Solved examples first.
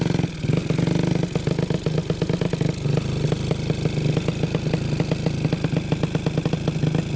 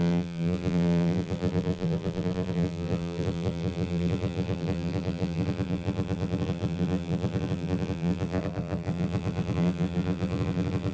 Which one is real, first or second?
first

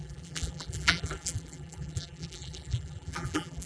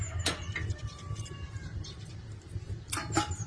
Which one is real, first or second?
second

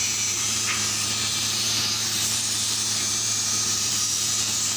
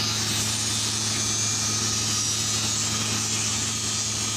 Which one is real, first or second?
second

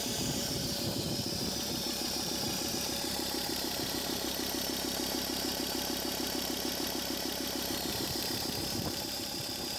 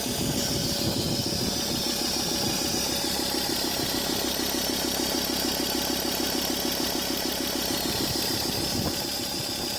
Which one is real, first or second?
second